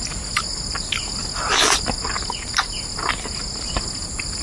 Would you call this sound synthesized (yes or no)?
no